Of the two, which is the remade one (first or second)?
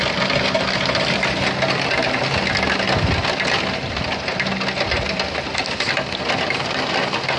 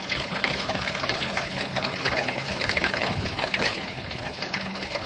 second